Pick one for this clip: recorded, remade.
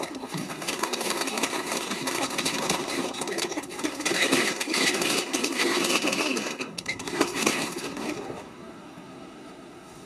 remade